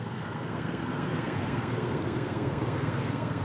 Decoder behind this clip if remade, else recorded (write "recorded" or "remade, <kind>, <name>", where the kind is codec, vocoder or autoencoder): remade, codec, SNAC